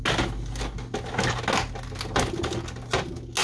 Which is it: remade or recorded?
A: recorded